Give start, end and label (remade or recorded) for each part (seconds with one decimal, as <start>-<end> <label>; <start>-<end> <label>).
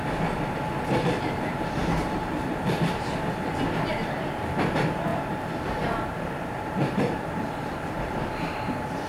0.0-1.8 recorded; 1.8-3.3 remade; 3.3-5.1 recorded; 5.1-9.1 remade